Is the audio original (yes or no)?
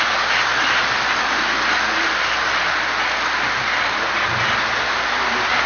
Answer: yes